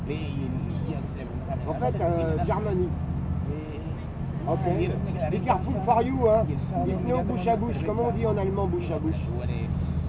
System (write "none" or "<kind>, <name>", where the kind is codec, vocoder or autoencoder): none